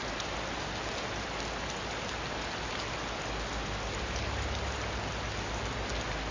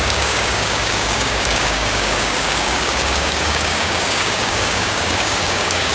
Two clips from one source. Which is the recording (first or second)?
first